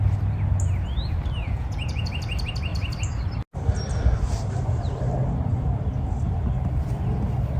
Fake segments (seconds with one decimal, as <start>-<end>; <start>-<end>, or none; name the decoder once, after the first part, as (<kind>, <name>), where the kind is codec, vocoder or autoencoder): 1.4-2.1 (vocoder, Vocos)